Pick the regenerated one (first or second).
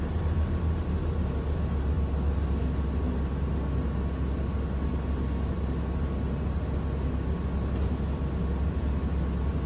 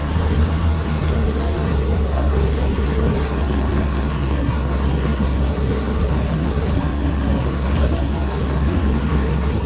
second